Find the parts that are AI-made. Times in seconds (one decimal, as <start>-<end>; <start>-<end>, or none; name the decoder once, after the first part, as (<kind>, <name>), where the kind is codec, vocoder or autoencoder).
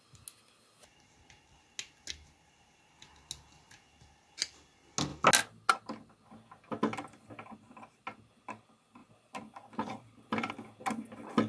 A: 9.0-10.5 (vocoder, BigVGAN v2)